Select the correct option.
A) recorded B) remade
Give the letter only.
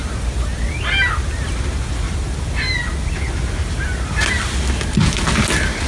A